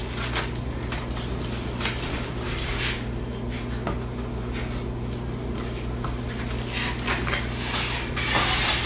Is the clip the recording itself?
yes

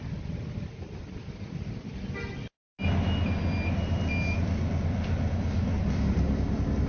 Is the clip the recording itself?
yes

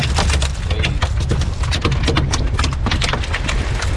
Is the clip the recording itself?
yes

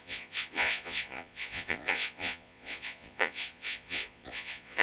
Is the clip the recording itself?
no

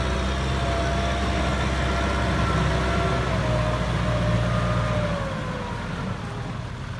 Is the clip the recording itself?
yes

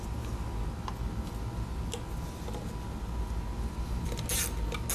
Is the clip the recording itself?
yes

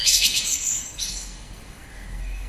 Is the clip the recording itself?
no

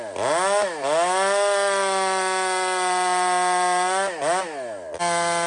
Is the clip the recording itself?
yes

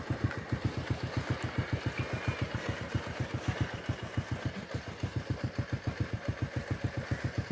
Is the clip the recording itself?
yes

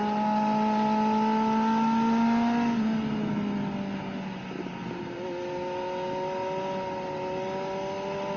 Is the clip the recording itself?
yes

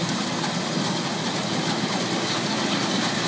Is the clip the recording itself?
yes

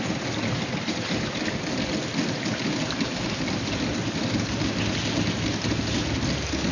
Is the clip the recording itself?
yes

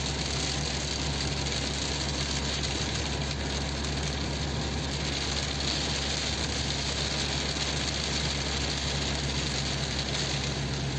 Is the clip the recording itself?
yes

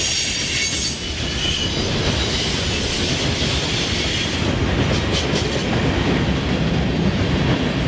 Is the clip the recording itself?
yes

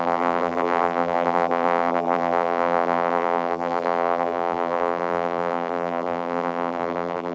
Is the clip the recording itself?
no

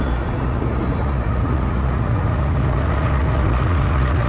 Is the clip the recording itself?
no